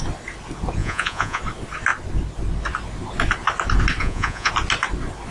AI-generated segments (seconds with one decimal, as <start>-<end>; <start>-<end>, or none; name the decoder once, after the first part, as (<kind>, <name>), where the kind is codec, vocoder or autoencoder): 0.8-1.4 (vocoder, Vocos); 4.0-4.5